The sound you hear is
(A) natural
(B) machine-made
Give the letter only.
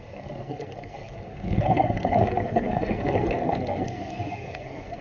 B